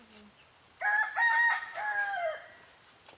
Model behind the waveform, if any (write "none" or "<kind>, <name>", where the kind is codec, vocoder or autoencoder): none